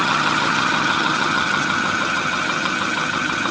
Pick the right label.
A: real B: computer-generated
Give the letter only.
B